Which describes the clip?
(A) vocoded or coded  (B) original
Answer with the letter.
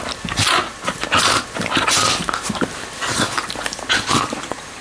B